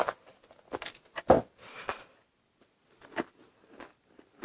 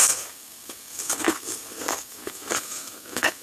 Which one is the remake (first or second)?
second